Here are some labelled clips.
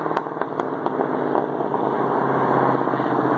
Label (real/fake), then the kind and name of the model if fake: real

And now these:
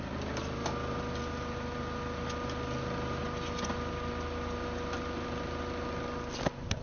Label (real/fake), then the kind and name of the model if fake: real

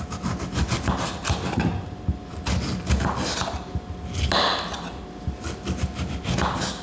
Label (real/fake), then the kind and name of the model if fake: real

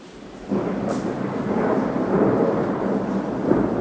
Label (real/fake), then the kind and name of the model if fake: real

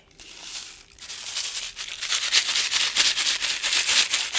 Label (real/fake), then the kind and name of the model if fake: real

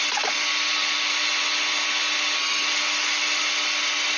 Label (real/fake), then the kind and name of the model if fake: real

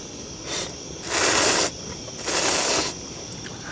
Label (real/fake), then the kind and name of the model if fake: real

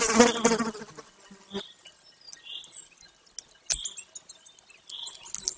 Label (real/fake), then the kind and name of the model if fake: real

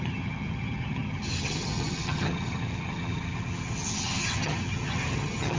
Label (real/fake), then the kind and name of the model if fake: fake, vocoder, HiFi-GAN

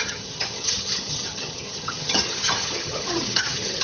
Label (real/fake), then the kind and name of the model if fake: fake, vocoder, HiFi-GAN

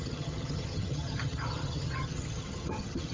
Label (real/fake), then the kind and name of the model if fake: fake, vocoder, HiFi-GAN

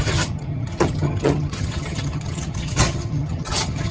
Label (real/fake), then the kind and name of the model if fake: fake, vocoder, HiFi-GAN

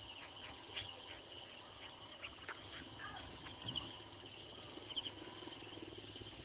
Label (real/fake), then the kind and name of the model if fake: fake, vocoder, HiFi-GAN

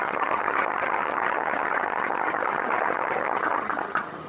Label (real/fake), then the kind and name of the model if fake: fake, vocoder, HiFi-GAN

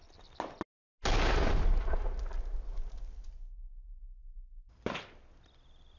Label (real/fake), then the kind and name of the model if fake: real